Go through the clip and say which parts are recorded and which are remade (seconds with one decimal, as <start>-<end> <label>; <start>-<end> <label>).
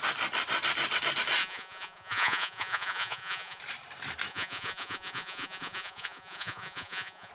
0.0-1.4 recorded; 1.4-3.6 remade; 3.6-4.3 recorded; 4.3-7.3 remade